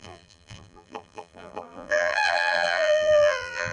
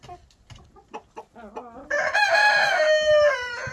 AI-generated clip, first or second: first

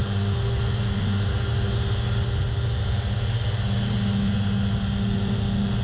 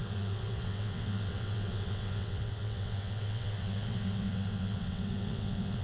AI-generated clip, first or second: second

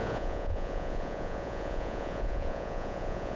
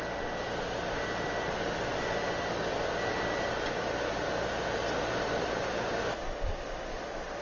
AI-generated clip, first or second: first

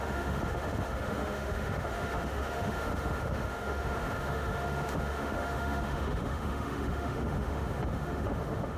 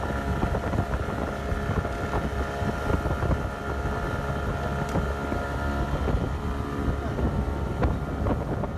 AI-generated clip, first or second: first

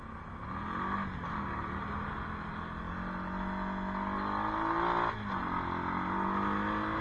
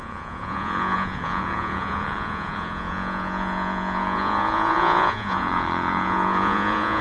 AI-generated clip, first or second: second